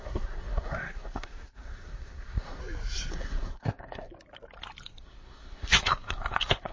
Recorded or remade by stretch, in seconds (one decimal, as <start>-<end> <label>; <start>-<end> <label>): 0.0-2.6 remade; 2.6-3.1 recorded; 3.1-4.1 remade; 4.1-5.0 recorded; 5.0-6.7 remade

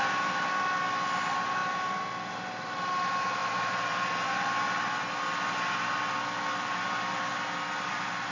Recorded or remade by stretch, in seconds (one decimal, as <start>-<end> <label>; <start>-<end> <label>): 0.0-8.3 recorded

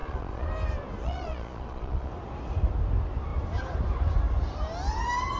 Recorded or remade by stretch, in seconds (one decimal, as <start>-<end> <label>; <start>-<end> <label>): 0.0-0.5 remade; 0.5-1.0 recorded; 1.0-2.1 remade; 2.1-5.4 recorded

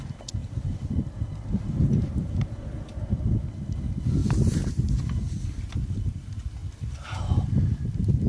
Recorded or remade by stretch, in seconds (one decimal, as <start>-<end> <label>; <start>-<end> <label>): 0.0-4.2 recorded; 4.2-4.9 remade; 4.9-8.3 recorded

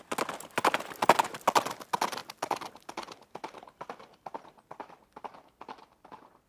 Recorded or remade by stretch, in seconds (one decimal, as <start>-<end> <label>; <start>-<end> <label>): 0.0-6.5 recorded